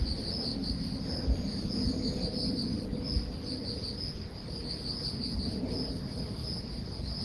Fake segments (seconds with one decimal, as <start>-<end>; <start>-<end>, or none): none